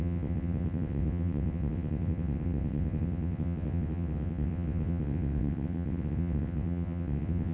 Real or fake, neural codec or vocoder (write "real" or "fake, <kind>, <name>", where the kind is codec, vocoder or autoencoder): fake, vocoder, WaveNeXt